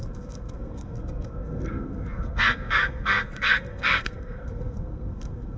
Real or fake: fake